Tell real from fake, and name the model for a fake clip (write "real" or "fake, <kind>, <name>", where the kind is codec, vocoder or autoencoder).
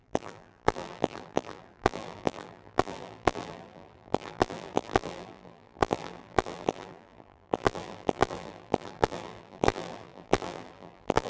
fake, vocoder, BigVGAN v2